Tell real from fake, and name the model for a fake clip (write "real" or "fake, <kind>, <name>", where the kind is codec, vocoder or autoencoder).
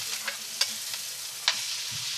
real